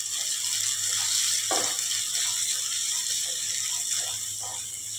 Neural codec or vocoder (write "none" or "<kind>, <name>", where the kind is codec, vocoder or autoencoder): none